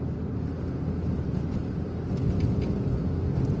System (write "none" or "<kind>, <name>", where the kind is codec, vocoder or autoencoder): none